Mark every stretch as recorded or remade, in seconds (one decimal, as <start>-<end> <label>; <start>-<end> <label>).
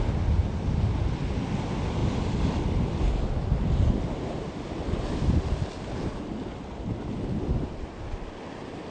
0.0-8.9 recorded